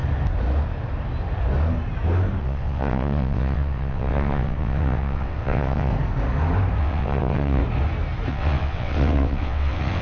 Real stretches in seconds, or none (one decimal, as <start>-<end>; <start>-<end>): 0.0-2.4; 5.9-6.8; 7.6-8.3

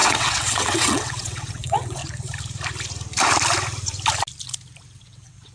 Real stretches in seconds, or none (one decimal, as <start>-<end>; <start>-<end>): 2.0-5.0

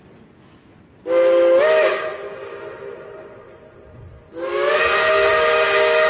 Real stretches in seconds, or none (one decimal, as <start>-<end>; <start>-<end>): 0.0-6.1

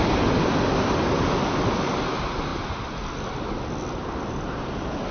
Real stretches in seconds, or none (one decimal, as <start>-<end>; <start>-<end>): 0.0-5.1